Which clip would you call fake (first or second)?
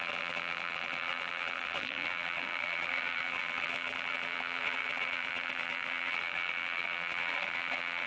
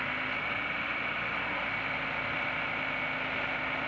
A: first